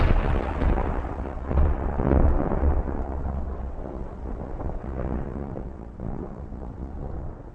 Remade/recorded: remade